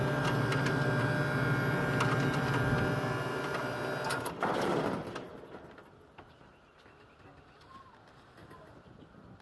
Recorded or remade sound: recorded